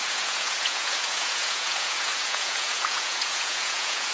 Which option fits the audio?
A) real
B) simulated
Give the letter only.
B